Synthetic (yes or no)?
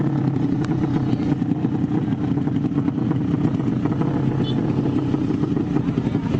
no